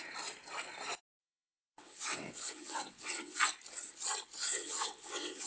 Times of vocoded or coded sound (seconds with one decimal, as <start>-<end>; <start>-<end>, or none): 1.2-3.4; 4.4-5.5